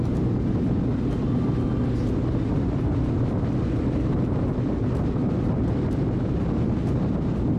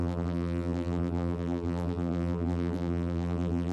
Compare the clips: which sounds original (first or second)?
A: first